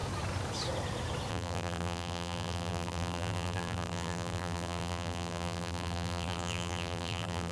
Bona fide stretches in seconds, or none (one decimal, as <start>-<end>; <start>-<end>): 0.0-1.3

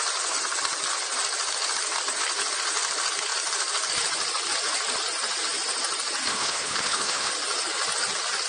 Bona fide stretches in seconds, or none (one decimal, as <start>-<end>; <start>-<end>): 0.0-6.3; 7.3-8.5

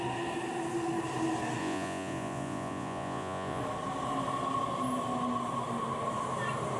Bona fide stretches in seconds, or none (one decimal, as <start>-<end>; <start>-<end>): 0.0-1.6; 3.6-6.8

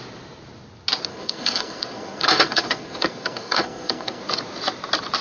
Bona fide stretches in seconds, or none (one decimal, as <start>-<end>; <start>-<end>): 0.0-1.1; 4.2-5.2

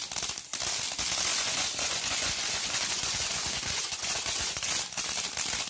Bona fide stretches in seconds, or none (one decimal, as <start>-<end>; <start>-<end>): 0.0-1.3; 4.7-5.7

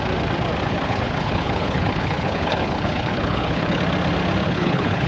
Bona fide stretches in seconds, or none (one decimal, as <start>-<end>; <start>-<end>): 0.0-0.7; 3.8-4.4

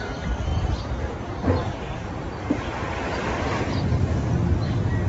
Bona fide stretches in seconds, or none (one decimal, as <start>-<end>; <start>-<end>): 0.0-5.1

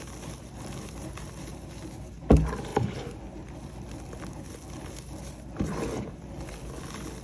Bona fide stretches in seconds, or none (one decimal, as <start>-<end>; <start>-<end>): 0.0-7.2